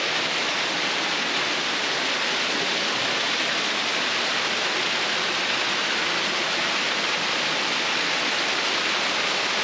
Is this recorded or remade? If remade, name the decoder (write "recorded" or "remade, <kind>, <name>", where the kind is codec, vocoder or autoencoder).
recorded